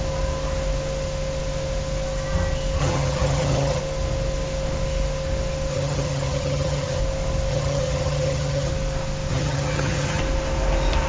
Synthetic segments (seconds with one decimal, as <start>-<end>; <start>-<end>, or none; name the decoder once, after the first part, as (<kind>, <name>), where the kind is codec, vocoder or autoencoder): 2.8-3.8 (vocoder, HiFi-GAN); 5.7-7.0; 7.5-8.7; 9.3-10.2